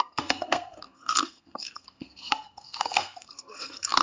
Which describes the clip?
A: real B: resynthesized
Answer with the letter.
B